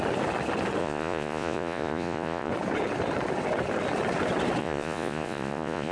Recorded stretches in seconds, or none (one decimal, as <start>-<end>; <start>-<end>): 0.0-0.8; 2.5-4.6